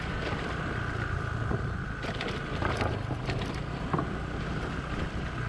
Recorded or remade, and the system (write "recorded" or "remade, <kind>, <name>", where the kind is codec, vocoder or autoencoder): remade, vocoder, BigVGAN v2